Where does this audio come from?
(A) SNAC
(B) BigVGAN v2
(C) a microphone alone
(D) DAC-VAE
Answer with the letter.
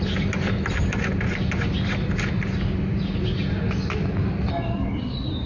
C